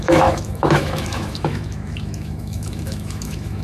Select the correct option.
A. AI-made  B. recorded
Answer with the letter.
A